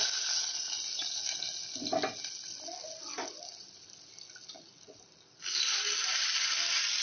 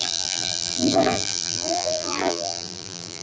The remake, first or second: second